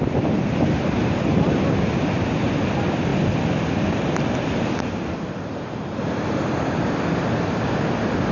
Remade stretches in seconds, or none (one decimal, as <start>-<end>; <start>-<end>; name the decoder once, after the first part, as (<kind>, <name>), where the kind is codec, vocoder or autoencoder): none